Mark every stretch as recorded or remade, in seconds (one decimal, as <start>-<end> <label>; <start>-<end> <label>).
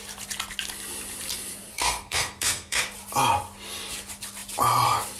0.0-1.7 recorded; 1.7-2.8 remade; 2.8-5.2 recorded